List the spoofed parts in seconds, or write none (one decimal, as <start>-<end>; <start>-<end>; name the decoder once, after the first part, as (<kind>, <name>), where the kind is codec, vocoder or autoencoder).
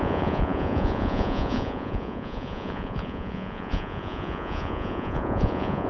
0.0-5.9 (vocoder, Vocos)